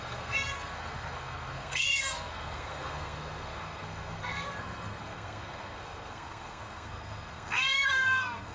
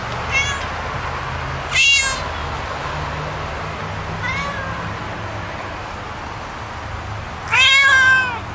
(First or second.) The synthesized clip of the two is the first